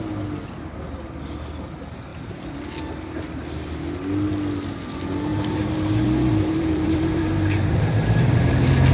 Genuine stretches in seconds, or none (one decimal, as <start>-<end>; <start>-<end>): 0.0-5.3